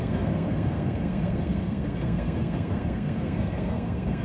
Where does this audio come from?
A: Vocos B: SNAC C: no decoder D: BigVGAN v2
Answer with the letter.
B